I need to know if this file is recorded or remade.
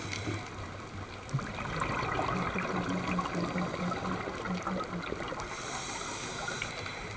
recorded